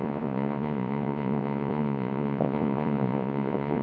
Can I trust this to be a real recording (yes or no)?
no